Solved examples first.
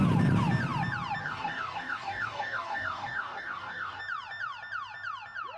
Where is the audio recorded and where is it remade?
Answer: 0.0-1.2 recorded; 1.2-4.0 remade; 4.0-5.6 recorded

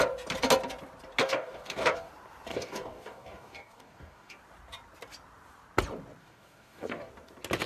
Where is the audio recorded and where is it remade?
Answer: 0.0-1.2 recorded; 1.2-2.1 remade; 2.1-2.5 recorded; 2.5-4.4 remade; 4.4-6.2 recorded; 6.2-7.1 remade; 7.1-7.7 recorded